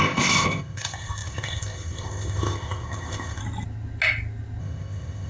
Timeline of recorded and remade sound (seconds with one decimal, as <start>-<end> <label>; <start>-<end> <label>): 0.0-3.4 remade; 3.4-4.6 recorded; 4.6-5.3 remade